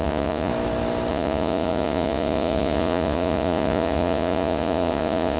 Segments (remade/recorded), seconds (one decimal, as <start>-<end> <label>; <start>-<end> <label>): 0.0-0.5 remade; 0.5-1.1 recorded; 1.1-5.4 remade